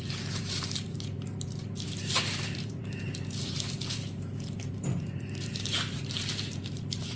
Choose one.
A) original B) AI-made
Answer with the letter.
B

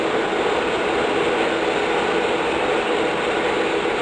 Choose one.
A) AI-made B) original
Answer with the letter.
B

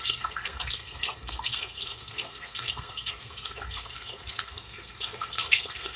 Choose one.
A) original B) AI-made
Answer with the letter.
B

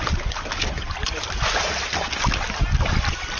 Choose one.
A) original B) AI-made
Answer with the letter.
A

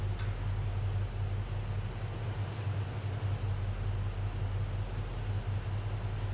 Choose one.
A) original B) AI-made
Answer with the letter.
A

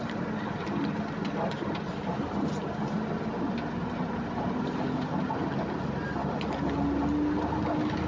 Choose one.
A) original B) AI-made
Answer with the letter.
A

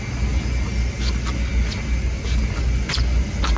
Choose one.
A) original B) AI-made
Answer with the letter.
A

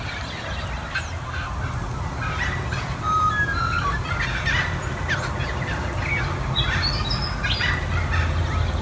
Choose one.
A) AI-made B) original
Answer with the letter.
B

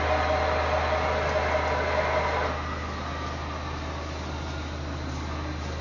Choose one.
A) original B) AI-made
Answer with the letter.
A